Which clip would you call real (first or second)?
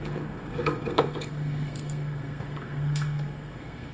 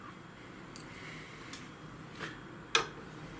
second